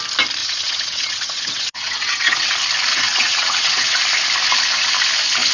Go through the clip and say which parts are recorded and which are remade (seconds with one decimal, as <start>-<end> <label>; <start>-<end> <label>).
0.0-0.4 recorded; 0.4-2.5 remade; 2.5-2.9 recorded; 2.9-4.0 remade; 4.0-5.5 recorded